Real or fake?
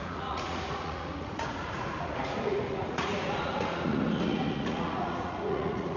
fake